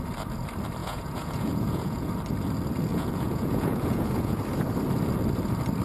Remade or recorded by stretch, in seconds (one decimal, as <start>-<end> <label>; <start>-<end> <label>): 0.0-0.8 recorded; 0.8-2.1 remade; 2.1-2.9 recorded; 2.9-4.4 remade; 4.4-5.8 recorded